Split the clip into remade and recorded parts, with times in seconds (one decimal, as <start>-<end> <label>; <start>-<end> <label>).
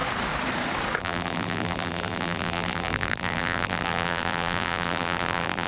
0.0-1.0 recorded; 1.0-5.7 remade